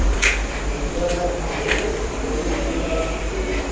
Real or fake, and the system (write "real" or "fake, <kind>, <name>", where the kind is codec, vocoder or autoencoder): fake, vocoder, BigVGAN v2